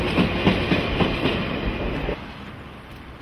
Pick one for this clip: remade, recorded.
recorded